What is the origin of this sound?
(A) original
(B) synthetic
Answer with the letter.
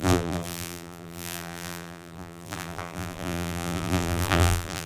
B